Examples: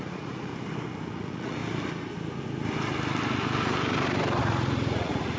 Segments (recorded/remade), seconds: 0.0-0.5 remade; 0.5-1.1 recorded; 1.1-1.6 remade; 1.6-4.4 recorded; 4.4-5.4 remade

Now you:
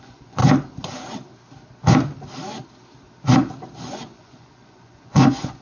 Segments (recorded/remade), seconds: 0.0-0.4 remade; 0.4-3.8 recorded; 3.8-5.6 remade

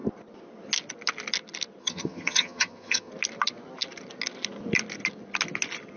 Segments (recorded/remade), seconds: 0.0-1.8 recorded; 1.8-3.1 remade; 3.1-6.0 recorded